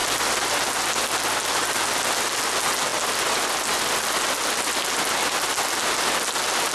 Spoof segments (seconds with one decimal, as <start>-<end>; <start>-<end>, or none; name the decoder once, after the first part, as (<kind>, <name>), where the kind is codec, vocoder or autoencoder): none